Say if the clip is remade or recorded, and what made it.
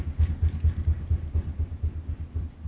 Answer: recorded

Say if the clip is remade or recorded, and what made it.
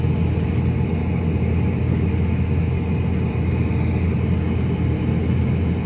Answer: recorded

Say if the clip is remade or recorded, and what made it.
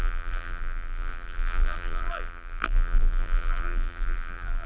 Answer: remade, vocoder, BigVGAN v2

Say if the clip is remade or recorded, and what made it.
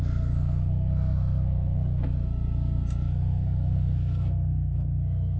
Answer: remade, codec, SNAC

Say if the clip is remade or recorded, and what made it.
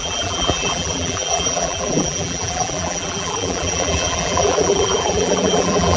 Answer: remade, vocoder, BigVGAN v2